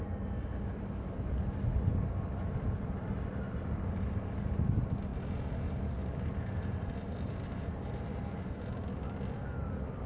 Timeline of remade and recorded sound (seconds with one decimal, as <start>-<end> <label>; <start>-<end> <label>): 0.0-5.1 recorded; 5.1-8.4 remade; 8.4-10.1 recorded